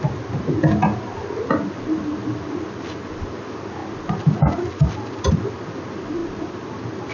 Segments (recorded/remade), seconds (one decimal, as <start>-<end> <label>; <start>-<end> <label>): 0.0-7.1 recorded